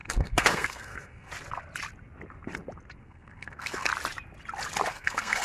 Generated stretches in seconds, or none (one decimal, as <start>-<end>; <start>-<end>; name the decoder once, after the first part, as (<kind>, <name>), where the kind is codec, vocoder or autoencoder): 0.0-1.3 (codec, SNAC); 3.0-3.9; 4.9-5.4